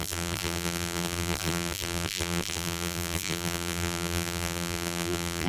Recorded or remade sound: remade